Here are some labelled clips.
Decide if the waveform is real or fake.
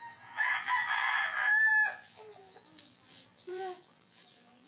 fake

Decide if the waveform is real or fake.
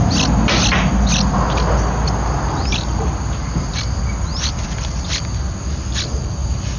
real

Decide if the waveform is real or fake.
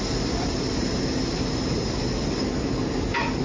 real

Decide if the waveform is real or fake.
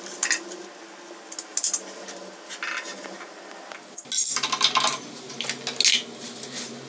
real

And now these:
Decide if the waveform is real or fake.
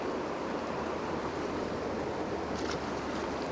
fake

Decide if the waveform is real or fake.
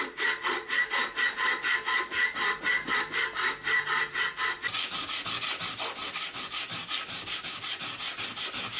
fake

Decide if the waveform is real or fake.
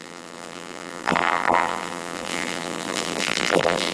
fake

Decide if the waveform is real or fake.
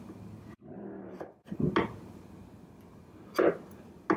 real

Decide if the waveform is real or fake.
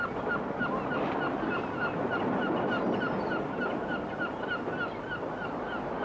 real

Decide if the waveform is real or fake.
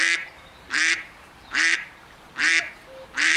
fake